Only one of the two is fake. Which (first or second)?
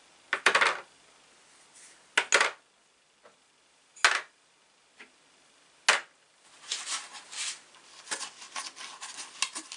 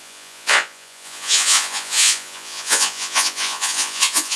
second